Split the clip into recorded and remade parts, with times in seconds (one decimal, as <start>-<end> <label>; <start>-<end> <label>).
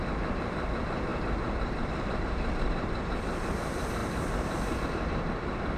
0.0-5.8 remade